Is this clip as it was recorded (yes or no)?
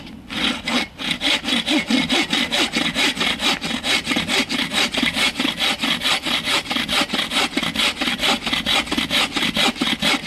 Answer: yes